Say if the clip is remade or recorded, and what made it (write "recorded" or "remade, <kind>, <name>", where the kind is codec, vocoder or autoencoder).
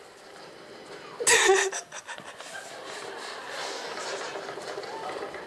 recorded